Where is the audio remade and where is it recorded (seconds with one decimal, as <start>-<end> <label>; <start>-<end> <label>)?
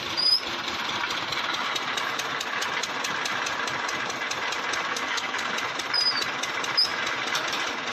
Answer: 0.0-4.9 recorded; 4.9-5.5 remade; 5.5-7.9 recorded